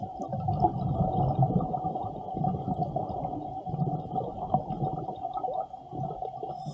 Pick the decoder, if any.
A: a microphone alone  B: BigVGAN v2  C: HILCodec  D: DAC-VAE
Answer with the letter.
A